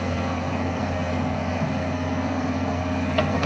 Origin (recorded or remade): remade